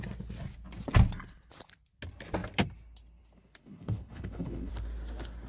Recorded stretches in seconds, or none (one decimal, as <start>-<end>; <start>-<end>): 0.0-3.6; 4.7-5.5